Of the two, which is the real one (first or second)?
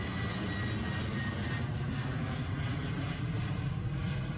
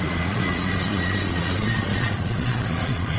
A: first